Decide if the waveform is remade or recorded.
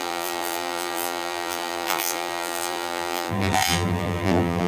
remade